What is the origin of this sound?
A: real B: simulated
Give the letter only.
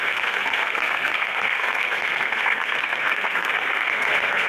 B